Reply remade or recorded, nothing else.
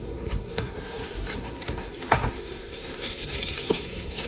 remade